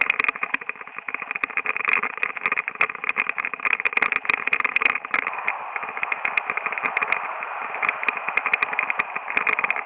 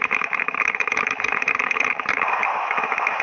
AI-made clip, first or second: second